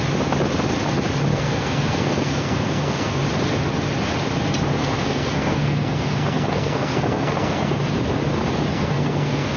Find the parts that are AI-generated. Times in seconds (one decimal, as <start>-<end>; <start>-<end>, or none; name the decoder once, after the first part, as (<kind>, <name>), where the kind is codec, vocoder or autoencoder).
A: 1.3-3.2 (codec, SNAC); 4.8-7.8; 8.7-9.6

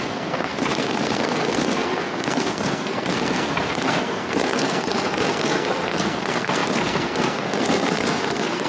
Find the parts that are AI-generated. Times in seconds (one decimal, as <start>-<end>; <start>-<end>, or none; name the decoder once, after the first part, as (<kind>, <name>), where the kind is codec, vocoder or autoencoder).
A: 0.0-8.7 (codec, SNAC)

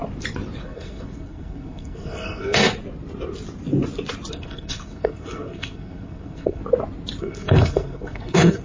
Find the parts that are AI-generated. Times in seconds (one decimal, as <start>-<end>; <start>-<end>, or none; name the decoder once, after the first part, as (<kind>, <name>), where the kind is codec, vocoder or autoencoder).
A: 0.6-2.6 (codec, SNAC); 4.3-6.6; 7.2-8.6

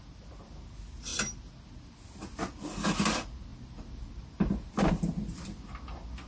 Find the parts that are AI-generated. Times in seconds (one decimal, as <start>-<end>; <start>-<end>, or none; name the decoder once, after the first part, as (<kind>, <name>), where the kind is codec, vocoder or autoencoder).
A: none

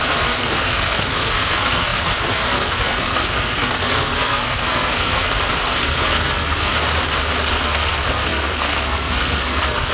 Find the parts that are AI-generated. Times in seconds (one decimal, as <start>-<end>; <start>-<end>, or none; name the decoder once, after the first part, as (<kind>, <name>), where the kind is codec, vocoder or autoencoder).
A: 0.0-6.7 (codec, SNAC); 7.5-9.9

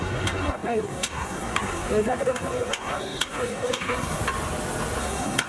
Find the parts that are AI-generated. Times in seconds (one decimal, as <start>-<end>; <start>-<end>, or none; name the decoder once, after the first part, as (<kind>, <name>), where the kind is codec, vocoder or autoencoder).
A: 0.0-4.2 (codec, SNAC); 5.0-5.5

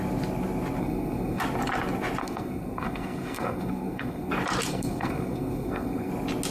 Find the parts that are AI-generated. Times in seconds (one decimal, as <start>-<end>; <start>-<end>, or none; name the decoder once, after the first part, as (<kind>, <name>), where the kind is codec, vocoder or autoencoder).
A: 0.8-1.4 (codec, SNAC); 2.2-4.3; 4.7-6.1

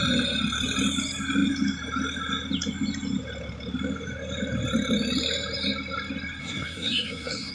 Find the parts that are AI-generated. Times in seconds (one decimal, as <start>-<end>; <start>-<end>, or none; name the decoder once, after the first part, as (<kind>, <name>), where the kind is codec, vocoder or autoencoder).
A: 6.4-7.5 (codec, SNAC)